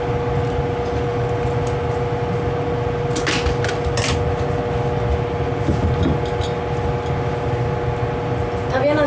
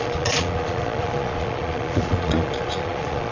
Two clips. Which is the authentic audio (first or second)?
first